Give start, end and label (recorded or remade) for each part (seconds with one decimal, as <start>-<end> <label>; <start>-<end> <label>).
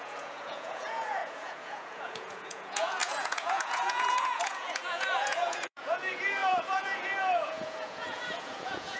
0.0-9.0 remade